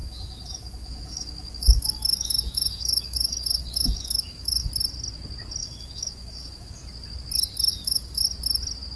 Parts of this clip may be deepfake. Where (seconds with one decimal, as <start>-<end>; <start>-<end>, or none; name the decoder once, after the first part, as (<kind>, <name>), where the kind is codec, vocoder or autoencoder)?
0.0-4.7 (autoencoder, DAC-VAE); 5.6-6.7; 7.7-8.2